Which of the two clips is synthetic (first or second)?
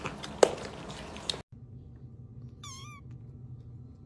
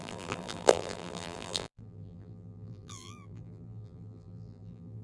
second